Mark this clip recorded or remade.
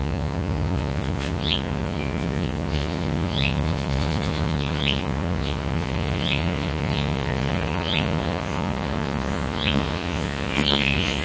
remade